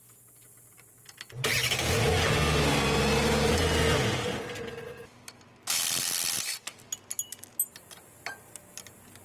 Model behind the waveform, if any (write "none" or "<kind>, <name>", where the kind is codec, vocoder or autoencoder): none